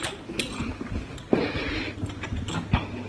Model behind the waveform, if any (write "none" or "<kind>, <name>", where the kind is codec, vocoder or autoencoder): none